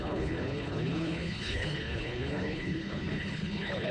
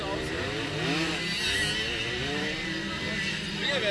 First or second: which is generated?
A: first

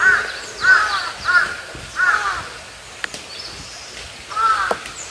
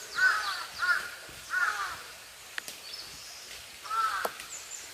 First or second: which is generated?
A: second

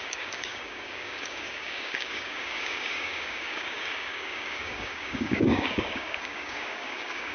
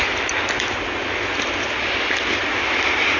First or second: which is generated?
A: first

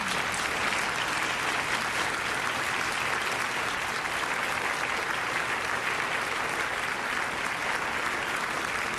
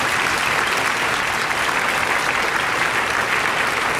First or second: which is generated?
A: second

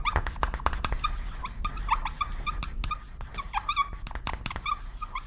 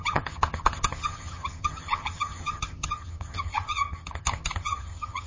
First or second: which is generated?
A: second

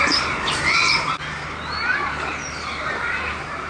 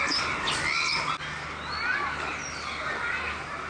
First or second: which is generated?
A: first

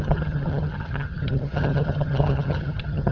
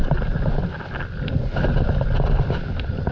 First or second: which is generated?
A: first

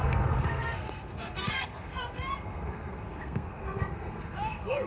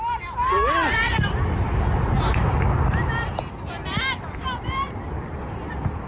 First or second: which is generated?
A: first